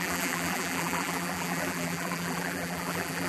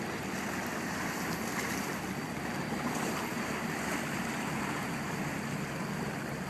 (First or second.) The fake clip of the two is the first